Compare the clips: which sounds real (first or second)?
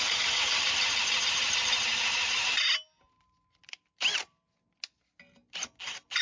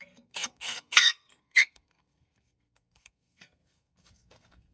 first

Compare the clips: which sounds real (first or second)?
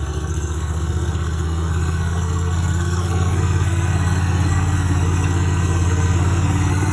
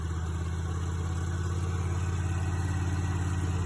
second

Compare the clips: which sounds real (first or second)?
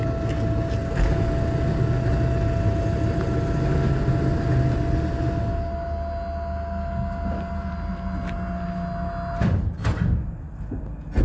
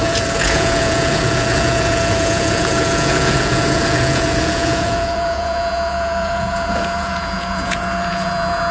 first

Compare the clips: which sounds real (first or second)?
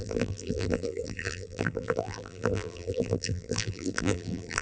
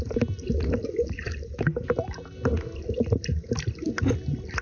second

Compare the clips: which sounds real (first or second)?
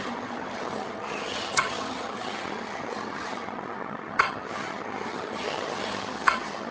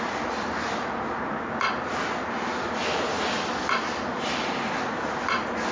second